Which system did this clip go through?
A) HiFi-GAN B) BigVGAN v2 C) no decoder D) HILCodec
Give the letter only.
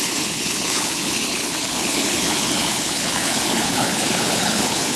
D